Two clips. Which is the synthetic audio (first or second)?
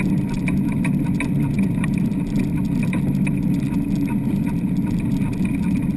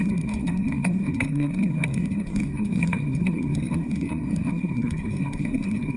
second